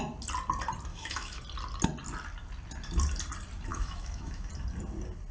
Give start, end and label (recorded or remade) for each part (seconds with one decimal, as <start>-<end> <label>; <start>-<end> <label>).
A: 0.0-0.9 recorded; 0.9-1.4 remade; 1.4-3.7 recorded; 3.7-4.5 remade; 4.5-5.3 recorded